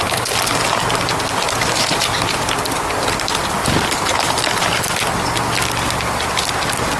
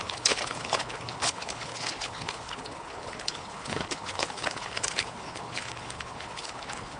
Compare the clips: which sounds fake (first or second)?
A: second